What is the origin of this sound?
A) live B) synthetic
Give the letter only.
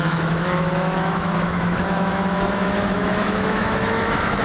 B